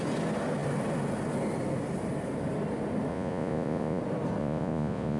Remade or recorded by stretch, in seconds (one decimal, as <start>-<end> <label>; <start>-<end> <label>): 0.0-3.1 recorded; 3.1-4.0 remade; 4.0-4.4 recorded; 4.4-5.2 remade

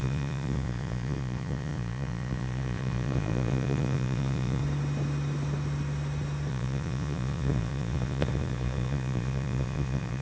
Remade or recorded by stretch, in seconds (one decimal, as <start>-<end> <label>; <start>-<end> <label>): 0.0-4.6 remade; 4.6-6.5 recorded; 6.5-10.2 remade

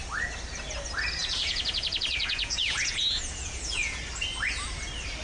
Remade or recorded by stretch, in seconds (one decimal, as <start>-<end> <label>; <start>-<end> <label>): 0.0-1.2 recorded; 1.2-4.0 remade; 4.0-5.2 recorded

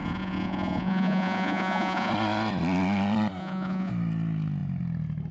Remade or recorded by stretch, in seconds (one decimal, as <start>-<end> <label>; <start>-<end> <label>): 0.0-2.1 remade; 2.1-3.4 recorded; 3.4-3.9 remade; 3.9-5.3 recorded